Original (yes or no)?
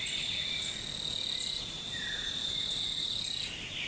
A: yes